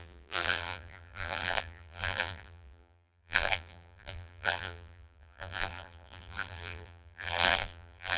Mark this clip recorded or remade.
remade